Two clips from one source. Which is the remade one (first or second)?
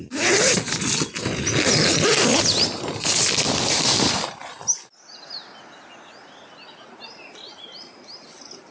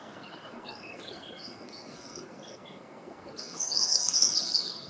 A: second